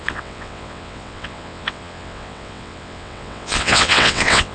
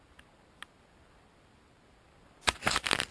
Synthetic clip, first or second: first